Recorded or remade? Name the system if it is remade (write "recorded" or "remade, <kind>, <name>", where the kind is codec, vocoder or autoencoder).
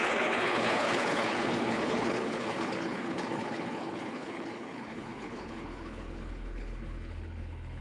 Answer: remade, codec, HILCodec